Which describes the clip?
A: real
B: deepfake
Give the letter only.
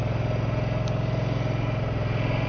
A